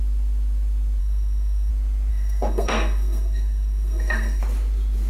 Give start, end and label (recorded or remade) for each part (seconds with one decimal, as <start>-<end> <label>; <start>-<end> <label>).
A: 0.0-1.0 recorded; 1.0-1.7 remade; 1.7-2.1 recorded; 2.1-4.4 remade; 4.4-5.1 recorded